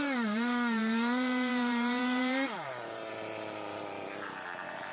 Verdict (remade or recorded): remade